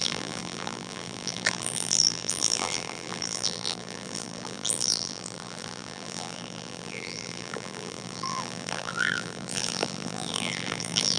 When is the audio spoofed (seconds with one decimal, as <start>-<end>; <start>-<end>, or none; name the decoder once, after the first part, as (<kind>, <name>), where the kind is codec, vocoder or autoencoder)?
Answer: 0.0-11.2 (vocoder, BigVGAN v2)